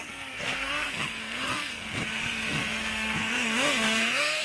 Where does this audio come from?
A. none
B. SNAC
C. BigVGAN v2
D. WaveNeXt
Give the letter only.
B